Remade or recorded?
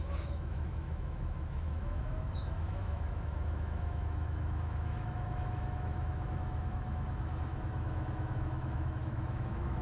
remade